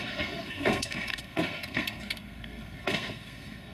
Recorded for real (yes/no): no